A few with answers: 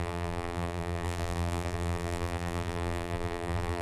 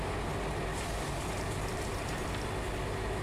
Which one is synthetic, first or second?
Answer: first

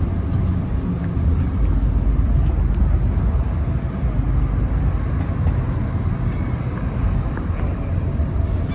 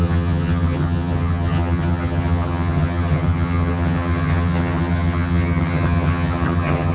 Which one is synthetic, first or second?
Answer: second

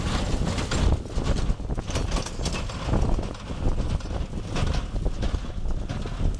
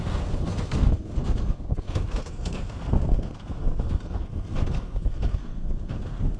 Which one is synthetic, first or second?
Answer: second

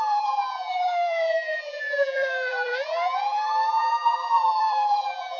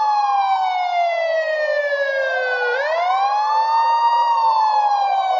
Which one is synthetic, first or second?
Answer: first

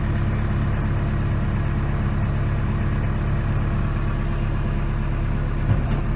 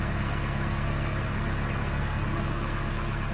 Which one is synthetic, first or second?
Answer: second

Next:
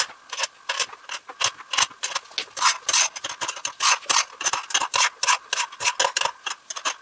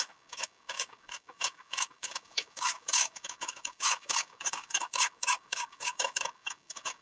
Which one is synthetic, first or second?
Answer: second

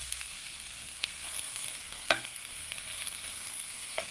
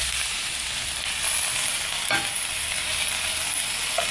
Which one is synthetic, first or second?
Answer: first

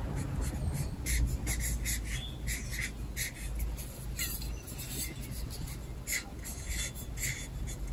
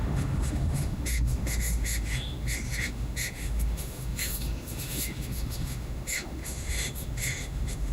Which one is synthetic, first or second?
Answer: second